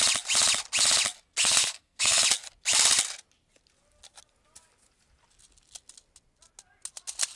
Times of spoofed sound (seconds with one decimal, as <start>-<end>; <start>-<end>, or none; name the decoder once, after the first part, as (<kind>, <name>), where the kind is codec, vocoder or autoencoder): 1.4-2.2 (codec, SNAC)